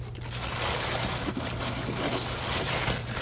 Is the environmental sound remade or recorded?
recorded